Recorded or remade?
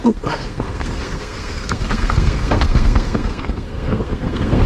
remade